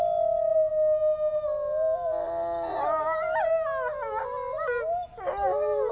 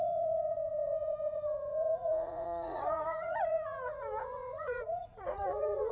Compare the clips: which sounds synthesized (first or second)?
second